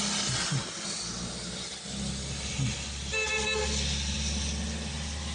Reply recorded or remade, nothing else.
recorded